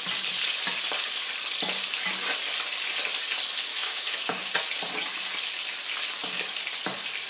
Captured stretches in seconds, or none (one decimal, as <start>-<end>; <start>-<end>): 0.0-3.7; 4.4-7.3